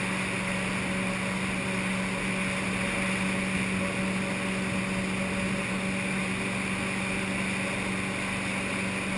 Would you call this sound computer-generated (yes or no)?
no